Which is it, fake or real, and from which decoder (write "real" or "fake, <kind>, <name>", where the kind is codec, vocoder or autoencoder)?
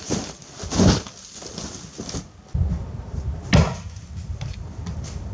real